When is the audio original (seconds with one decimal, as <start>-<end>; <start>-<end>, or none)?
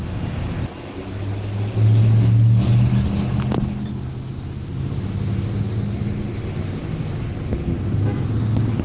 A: 0.0-8.8